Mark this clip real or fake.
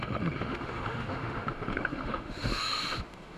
fake